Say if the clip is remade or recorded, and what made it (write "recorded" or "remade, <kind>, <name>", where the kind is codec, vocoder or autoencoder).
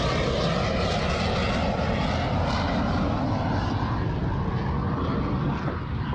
recorded